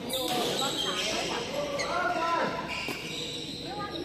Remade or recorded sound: recorded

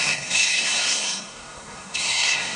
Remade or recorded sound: remade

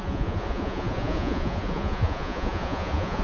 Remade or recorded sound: remade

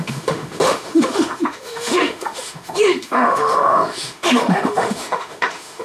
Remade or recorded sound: remade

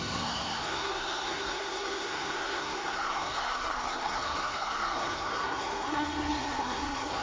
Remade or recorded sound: remade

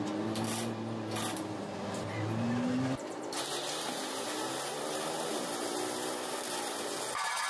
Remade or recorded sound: recorded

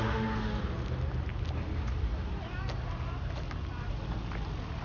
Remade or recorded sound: recorded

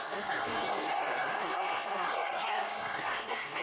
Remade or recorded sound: remade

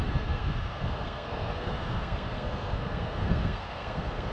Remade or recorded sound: remade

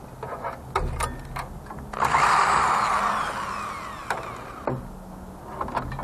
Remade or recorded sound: recorded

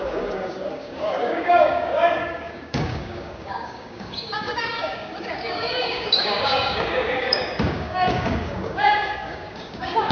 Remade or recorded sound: remade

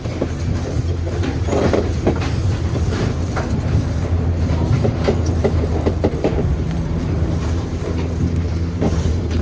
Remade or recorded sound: remade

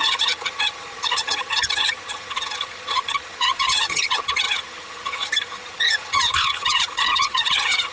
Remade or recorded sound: remade